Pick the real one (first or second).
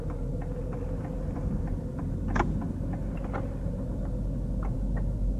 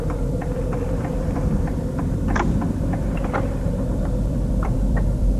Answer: first